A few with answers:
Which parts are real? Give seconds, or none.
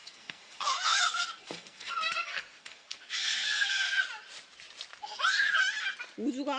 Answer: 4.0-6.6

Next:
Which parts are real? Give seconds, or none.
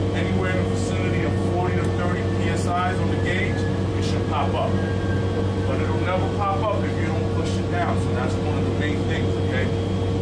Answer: 0.0-10.2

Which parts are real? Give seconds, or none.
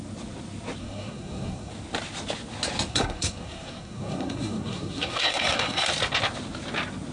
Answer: 0.0-0.8; 1.7-2.9; 5.9-7.1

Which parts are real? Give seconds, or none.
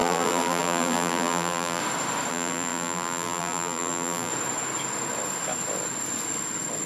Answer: 1.8-2.3; 4.3-6.9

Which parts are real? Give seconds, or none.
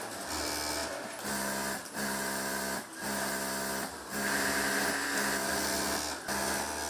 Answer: 0.0-6.9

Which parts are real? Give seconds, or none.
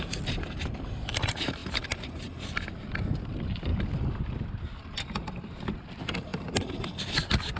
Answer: 0.0-7.6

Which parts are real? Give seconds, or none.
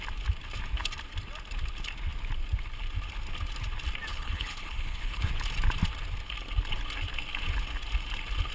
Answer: 0.0-4.1; 5.3-8.5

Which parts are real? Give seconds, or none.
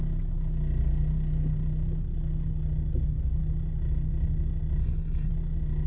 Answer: 0.0-4.8; 5.3-5.9